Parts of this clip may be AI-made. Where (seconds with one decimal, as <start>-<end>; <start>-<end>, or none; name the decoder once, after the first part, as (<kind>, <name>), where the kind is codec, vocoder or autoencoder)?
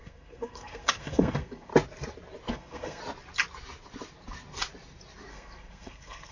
0.0-1.7 (codec, SNAC); 2.5-3.0; 5.3-6.3